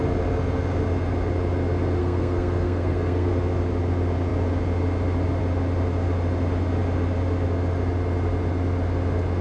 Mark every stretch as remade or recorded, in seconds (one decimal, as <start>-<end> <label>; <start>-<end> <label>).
0.0-2.0 recorded; 2.0-3.3 remade; 3.3-9.4 recorded